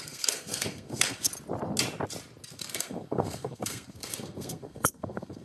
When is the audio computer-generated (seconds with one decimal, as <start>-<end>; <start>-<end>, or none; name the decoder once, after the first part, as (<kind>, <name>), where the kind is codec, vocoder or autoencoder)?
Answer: 0.0-1.3 (codec, SNAC); 2.5-5.4